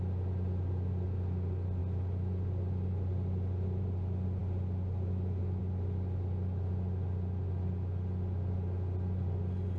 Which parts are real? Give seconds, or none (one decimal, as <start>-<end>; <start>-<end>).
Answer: 0.0-9.8